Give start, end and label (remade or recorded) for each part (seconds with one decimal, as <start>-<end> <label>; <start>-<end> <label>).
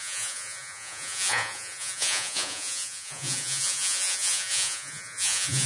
0.0-5.7 remade